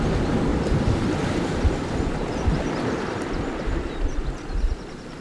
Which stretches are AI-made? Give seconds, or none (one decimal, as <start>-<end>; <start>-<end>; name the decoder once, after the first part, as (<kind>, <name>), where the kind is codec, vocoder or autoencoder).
0.5-3.6 (vocoder, BigVGAN v2)